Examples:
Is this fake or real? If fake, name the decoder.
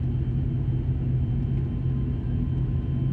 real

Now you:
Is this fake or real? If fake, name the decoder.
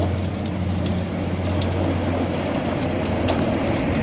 real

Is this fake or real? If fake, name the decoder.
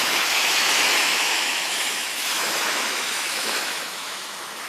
fake, autoencoder, DAC-VAE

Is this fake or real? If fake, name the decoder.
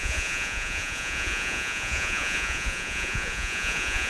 fake, vocoder, Vocos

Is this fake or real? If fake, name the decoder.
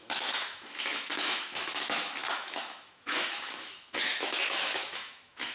fake, autoencoder, DAC-VAE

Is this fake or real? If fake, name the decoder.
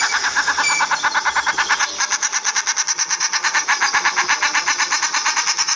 real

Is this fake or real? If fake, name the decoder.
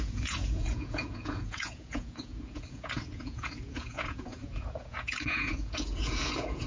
fake, vocoder, Vocos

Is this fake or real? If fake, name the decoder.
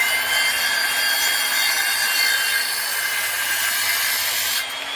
real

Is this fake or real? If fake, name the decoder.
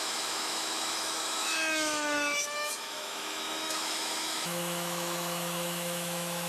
fake, autoencoder, DAC-VAE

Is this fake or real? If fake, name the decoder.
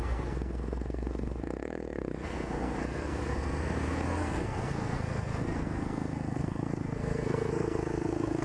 fake, codec, SNAC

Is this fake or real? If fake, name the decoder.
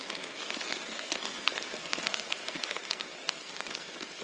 fake, codec, SNAC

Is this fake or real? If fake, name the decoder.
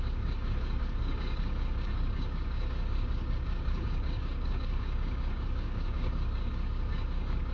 fake, codec, DAC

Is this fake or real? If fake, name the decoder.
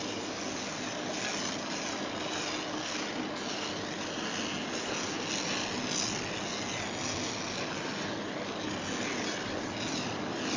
real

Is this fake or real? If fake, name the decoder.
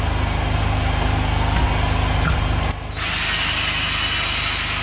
real